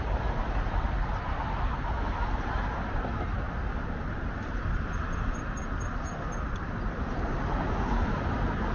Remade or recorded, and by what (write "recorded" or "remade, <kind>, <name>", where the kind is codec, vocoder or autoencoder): recorded